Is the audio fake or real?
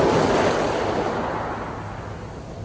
real